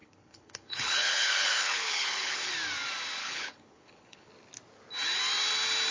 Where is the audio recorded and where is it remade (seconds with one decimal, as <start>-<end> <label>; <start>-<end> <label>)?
0.0-2.5 remade; 2.5-3.2 recorded; 3.2-4.3 remade; 4.3-5.9 recorded